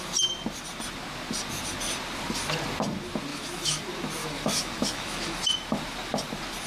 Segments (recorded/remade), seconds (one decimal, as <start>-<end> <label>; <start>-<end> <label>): 0.0-3.3 recorded; 3.3-3.8 remade; 3.8-4.2 recorded; 4.2-5.4 remade; 5.4-6.7 recorded

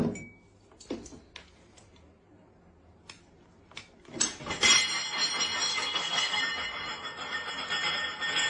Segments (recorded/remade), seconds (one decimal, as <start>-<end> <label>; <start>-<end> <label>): 0.0-5.7 recorded; 5.7-6.4 remade; 6.4-8.5 recorded

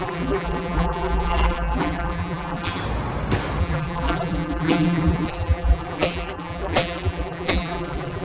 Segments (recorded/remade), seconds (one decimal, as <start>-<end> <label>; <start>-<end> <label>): 0.0-2.8 remade; 2.8-3.6 recorded; 3.6-8.2 remade

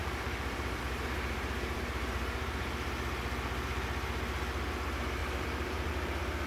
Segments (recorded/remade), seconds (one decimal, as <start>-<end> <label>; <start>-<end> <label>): 0.0-2.9 remade; 2.9-5.2 recorded; 5.2-5.9 remade; 5.9-6.5 recorded

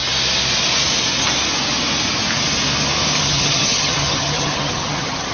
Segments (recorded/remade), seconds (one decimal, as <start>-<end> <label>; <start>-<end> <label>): 0.0-3.2 recorded; 3.2-5.3 remade

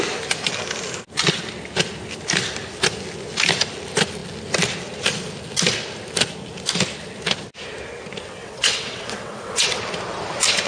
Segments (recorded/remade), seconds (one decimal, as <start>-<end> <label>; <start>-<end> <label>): 0.0-8.4 recorded; 8.4-9.8 remade; 9.8-10.7 recorded

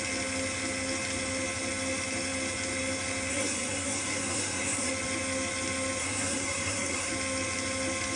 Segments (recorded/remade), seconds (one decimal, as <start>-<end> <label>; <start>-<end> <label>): 0.0-3.3 recorded; 3.3-4.9 remade; 4.9-6.0 recorded; 6.0-7.1 remade; 7.1-8.2 recorded

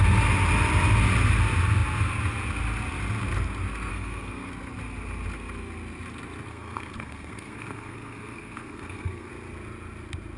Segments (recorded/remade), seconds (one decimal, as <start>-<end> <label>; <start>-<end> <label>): 0.0-3.9 recorded; 3.9-4.5 remade; 4.5-6.5 recorded; 6.5-9.3 remade; 9.3-10.4 recorded